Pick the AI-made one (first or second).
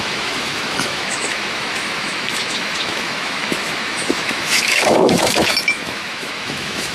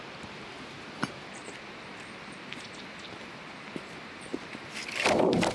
first